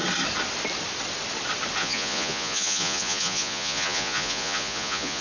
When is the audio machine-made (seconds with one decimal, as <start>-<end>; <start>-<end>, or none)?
1.8-5.2